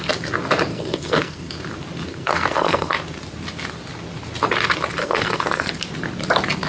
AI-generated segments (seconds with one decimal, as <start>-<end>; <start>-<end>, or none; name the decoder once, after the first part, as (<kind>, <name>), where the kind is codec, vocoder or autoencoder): 0.7-1.5 (codec, SNAC); 2.1-3.0; 5.0-5.7